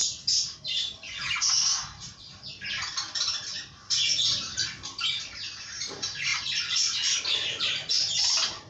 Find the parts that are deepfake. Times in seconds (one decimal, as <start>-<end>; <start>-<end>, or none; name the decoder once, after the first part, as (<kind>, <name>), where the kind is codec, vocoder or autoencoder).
4.5-5.2 (vocoder, BigVGAN v2); 6.3-7.9